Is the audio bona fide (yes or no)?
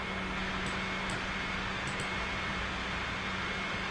yes